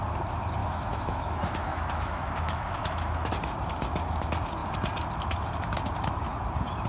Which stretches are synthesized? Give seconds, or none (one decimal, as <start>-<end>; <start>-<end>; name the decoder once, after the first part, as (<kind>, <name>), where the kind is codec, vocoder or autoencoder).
0.6-3.3 (autoencoder, DAC-VAE)